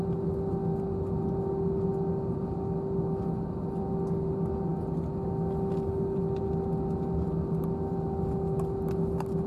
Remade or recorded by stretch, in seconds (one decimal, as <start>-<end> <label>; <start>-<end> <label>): 0.0-9.5 recorded